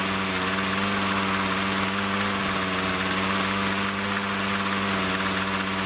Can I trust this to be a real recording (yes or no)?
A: yes